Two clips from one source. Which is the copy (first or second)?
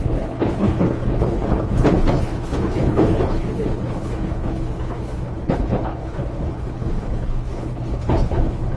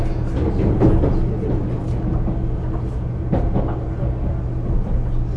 first